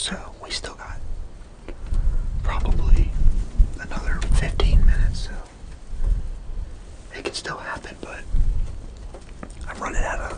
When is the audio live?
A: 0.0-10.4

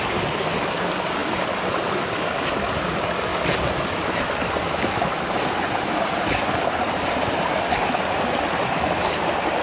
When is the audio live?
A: 0.0-9.6

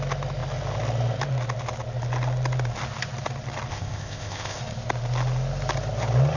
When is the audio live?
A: 0.0-3.7; 4.6-6.4

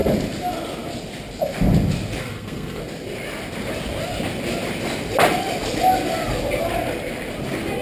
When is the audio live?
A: 0.0-2.2; 2.8-7.8